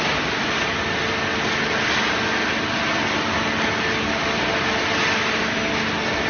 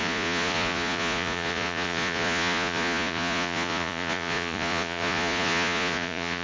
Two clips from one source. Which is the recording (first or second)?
first